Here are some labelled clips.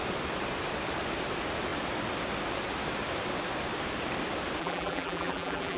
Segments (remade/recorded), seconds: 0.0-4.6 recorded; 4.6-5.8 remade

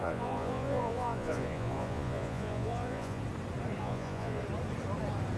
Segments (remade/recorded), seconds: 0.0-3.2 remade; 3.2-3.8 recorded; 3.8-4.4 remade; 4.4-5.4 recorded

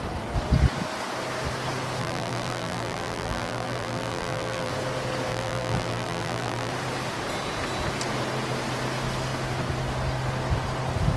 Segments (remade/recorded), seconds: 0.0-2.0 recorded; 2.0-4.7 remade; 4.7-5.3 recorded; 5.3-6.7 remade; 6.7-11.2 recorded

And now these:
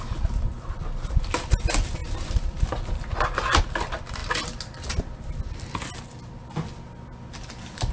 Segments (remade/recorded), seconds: 0.0-0.5 recorded; 0.5-1.6 remade; 1.6-2.0 recorded; 2.0-3.6 remade; 3.6-7.9 recorded

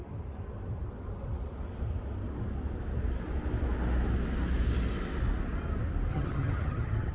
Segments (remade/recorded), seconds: 0.0-6.1 recorded; 6.1-7.1 remade